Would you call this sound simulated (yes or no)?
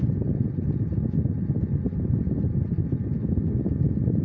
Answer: no